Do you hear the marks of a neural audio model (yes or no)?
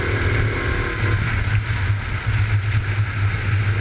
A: no